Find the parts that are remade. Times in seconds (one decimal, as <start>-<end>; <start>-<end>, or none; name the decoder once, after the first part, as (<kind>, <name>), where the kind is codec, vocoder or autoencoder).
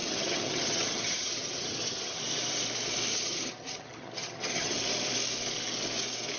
0.0-2.2 (vocoder, HiFi-GAN); 3.1-4.8